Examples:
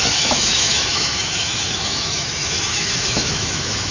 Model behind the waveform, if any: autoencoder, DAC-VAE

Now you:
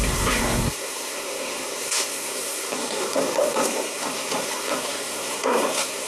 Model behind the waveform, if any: codec, SNAC